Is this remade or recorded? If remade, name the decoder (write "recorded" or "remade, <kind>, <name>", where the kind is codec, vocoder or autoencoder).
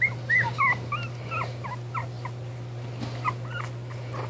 recorded